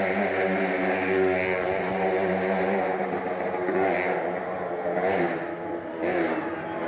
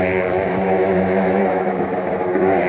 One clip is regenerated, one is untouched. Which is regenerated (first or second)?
second